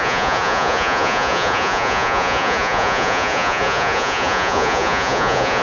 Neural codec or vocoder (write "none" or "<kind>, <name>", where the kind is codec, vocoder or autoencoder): vocoder, Vocos